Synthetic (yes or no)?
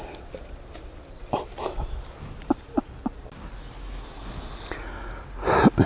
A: no